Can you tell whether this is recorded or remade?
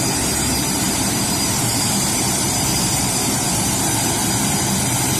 remade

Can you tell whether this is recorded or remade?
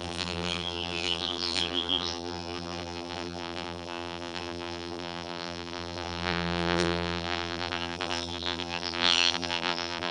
remade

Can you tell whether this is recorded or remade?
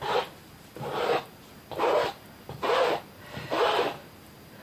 recorded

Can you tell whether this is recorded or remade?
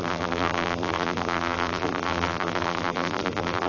remade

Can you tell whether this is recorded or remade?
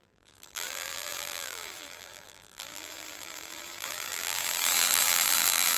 remade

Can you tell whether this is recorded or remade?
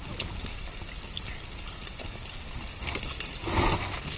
recorded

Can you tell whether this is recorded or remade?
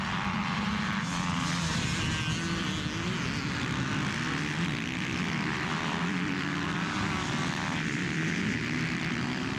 recorded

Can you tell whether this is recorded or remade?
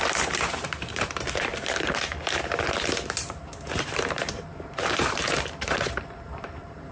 remade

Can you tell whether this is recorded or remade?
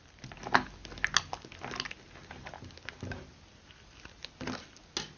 recorded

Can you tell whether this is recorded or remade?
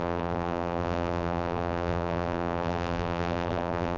remade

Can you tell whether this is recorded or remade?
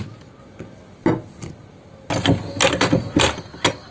recorded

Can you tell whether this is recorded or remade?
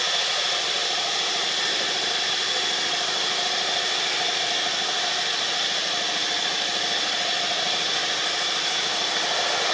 recorded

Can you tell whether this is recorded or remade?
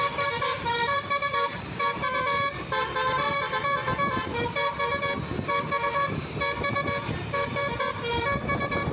remade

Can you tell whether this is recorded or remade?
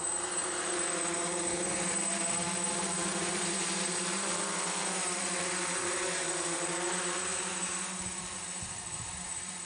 remade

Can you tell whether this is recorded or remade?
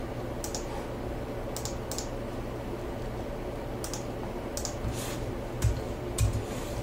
recorded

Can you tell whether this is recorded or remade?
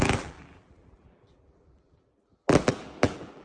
remade